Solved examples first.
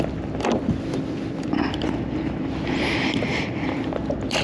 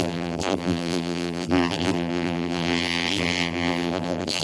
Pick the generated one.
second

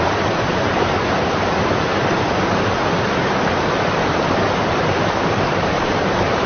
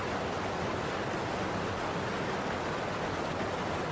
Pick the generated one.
first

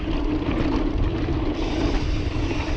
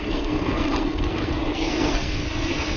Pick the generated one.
second